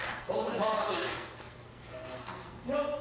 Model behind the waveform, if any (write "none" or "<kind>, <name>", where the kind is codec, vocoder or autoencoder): codec, SNAC